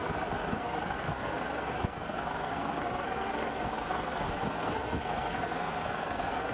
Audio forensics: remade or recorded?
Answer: remade